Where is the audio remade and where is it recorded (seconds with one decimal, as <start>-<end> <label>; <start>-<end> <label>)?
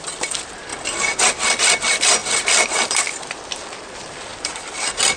0.0-2.2 recorded; 2.2-3.0 remade; 3.0-4.3 recorded; 4.3-4.8 remade; 4.8-5.2 recorded